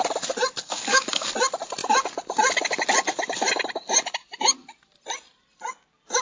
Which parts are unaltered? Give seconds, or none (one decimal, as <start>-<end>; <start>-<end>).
0.0-0.6; 1.3-6.2